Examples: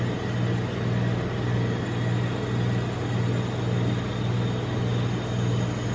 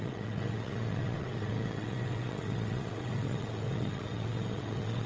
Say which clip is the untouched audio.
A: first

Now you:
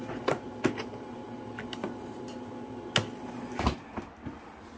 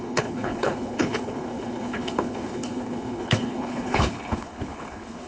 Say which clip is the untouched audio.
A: first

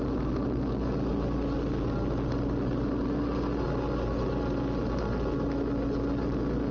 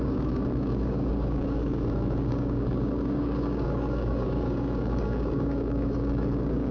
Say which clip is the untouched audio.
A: first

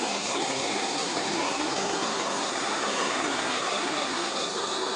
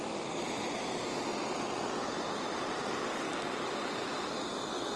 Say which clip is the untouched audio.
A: second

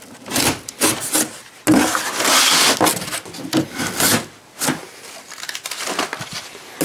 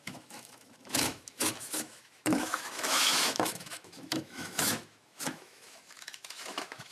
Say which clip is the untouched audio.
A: first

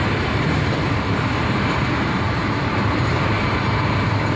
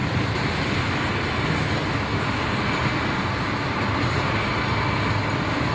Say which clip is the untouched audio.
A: second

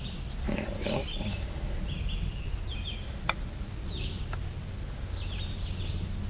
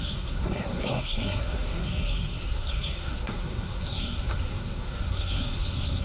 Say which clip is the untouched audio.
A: first